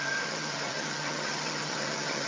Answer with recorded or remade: remade